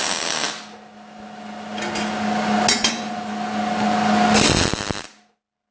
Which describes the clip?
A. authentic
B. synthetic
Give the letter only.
A